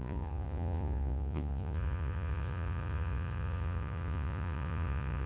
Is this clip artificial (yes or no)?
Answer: yes